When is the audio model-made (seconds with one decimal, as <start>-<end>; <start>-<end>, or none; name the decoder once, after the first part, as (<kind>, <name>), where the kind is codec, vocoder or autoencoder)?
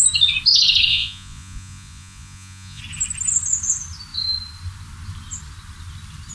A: 0.9-2.8 (vocoder, Vocos)